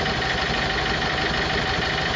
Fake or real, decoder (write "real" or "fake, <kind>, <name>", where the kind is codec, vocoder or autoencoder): real